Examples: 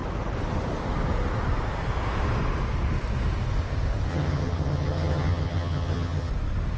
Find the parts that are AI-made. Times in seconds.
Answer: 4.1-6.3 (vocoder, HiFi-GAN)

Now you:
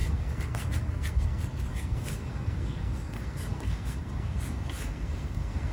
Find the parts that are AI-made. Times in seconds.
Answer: 0.0-5.7 (codec, SNAC)

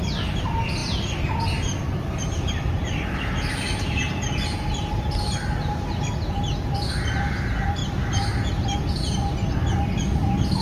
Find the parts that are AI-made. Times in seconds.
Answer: none